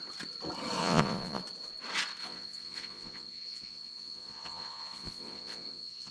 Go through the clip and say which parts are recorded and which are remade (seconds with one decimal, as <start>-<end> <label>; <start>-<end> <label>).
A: 0.0-0.8 recorded; 0.8-1.4 remade; 1.4-2.2 recorded; 2.2-6.1 remade